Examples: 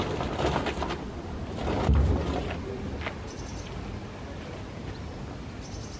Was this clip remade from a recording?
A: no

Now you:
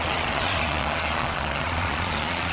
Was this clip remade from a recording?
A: yes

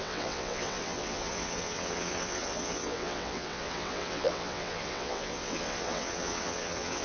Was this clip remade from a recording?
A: yes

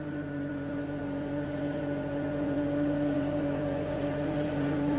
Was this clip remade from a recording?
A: yes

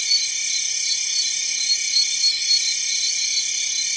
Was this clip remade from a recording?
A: no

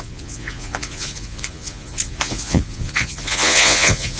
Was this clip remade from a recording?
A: yes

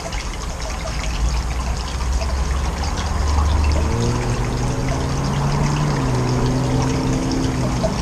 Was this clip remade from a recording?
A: no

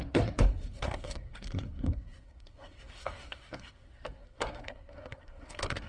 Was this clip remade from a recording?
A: yes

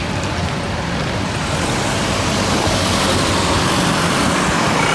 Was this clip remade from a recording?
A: no